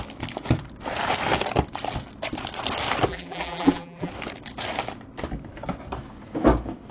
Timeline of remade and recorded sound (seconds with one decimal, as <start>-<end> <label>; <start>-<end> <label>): 0.0-3.1 recorded; 3.1-4.1 remade; 4.1-6.9 recorded

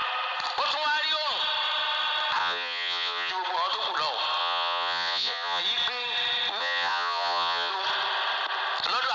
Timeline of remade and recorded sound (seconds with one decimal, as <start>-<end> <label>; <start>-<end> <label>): 0.0-2.4 recorded; 2.4-3.3 remade; 3.3-4.4 recorded; 4.4-5.6 remade; 5.6-6.6 recorded; 6.6-7.7 remade; 7.7-9.1 recorded

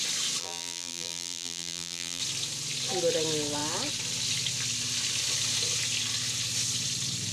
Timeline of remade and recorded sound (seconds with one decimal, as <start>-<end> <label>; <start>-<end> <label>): 0.0-0.4 recorded; 0.4-2.2 remade; 2.2-7.3 recorded

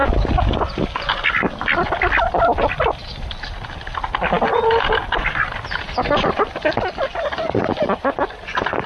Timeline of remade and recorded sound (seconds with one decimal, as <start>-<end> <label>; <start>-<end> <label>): 0.0-8.9 recorded

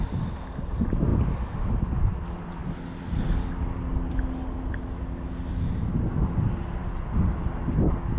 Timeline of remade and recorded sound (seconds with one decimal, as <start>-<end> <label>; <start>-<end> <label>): 0.0-2.6 recorded; 2.6-3.5 remade; 3.5-8.2 recorded

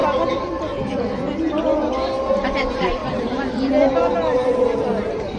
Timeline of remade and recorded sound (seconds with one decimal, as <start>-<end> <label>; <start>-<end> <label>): 0.0-1.4 remade; 1.4-3.0 recorded; 3.0-5.4 remade